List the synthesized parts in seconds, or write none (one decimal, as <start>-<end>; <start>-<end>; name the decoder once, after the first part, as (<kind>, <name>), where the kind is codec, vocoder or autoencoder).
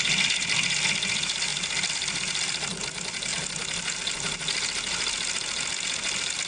none